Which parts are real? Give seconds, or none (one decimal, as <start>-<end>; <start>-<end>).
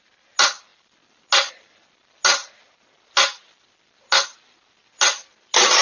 0.0-5.8